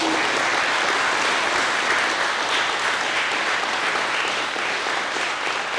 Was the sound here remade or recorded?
recorded